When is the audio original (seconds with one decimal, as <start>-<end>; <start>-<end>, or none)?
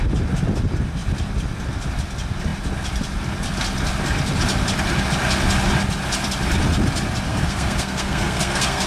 0.0-7.3